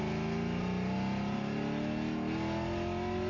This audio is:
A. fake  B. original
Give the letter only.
B